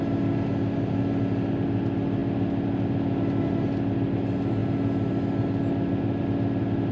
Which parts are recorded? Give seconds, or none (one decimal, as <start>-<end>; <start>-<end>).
0.0-6.9